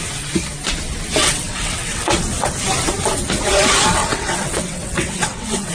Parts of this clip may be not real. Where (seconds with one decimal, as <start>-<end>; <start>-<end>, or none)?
1.2-2.1; 4.0-5.7